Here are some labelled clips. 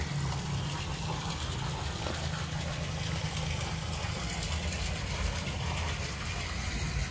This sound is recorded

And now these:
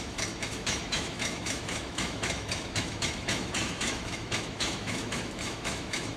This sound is remade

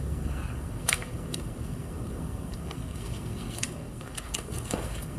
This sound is remade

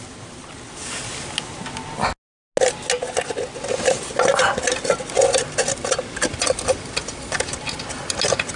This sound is recorded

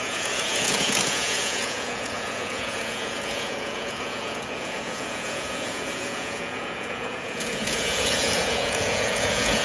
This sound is remade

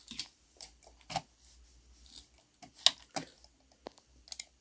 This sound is recorded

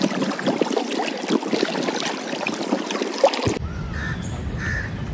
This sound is recorded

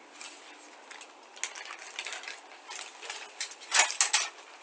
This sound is recorded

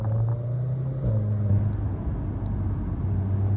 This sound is recorded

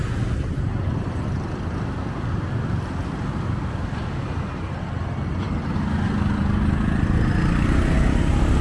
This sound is recorded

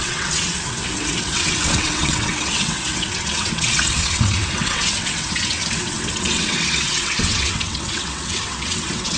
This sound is remade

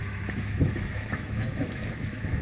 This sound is remade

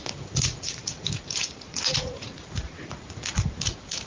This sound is remade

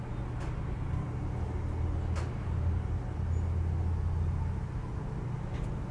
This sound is recorded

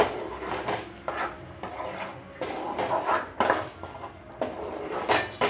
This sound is recorded